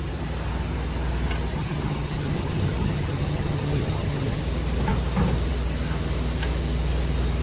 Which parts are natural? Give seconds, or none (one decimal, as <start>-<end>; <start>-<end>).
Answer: 0.0-1.5; 4.4-7.4